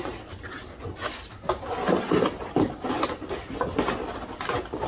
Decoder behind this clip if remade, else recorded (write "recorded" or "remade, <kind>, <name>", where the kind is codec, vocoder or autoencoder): recorded